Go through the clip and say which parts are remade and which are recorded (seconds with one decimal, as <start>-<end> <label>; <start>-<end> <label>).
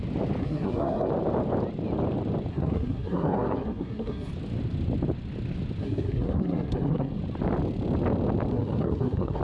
0.0-0.4 recorded; 0.4-1.1 remade; 1.1-2.5 recorded; 2.5-4.3 remade; 4.3-5.8 recorded; 5.8-7.2 remade; 7.2-8.5 recorded; 8.5-9.4 remade